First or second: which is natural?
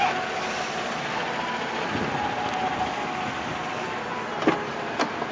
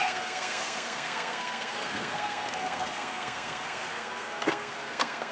first